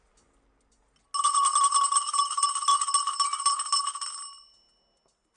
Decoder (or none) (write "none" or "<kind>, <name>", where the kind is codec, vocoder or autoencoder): none